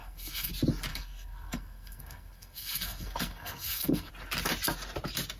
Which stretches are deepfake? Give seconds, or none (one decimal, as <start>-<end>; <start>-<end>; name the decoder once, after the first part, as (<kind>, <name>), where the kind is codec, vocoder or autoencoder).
0.0-0.5 (codec, SNAC); 0.9-4.1